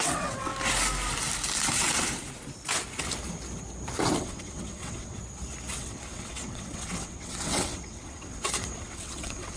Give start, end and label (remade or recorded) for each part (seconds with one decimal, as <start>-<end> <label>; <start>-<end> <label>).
0.0-0.5 remade; 0.5-4.2 recorded; 4.2-5.2 remade; 5.2-5.8 recorded; 5.8-9.6 remade

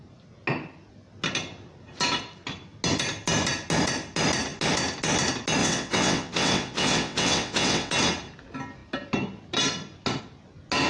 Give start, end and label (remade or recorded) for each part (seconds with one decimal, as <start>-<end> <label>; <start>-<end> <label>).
0.0-5.6 recorded; 5.6-7.9 remade; 7.9-10.9 recorded

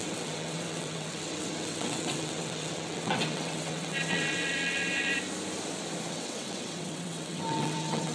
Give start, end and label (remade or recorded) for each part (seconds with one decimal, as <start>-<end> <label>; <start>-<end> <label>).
0.0-5.1 remade; 5.1-6.1 recorded; 6.1-8.1 remade

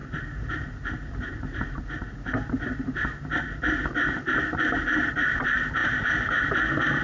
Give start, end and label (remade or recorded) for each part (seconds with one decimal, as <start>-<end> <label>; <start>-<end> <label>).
0.0-7.0 recorded